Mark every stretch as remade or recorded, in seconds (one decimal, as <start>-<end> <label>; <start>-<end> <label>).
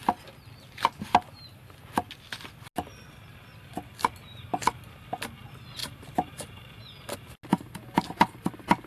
0.0-5.8 recorded; 5.8-6.8 remade; 6.8-8.9 recorded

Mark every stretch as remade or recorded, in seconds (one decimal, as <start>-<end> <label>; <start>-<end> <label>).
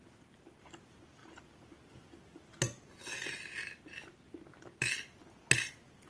0.0-6.1 recorded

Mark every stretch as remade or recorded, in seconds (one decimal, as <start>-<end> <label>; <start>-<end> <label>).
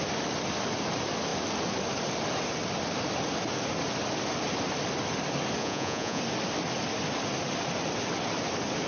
0.0-5.6 recorded; 5.6-6.2 remade; 6.2-8.9 recorded